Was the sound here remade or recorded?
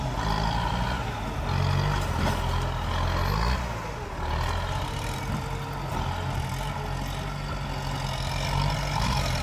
recorded